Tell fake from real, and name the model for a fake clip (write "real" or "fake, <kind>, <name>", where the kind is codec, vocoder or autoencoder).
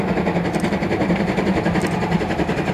real